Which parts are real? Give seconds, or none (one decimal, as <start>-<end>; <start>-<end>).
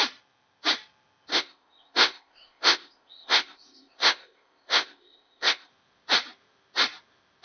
0.0-1.3; 5.7-7.4